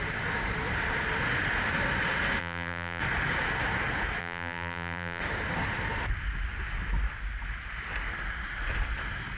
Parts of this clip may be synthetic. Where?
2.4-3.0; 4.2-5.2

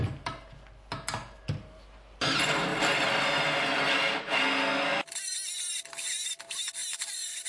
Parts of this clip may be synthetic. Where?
none